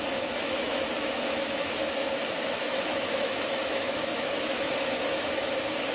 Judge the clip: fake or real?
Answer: fake